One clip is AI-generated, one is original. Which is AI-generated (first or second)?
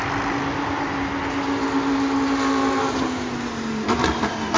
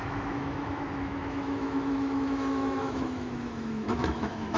second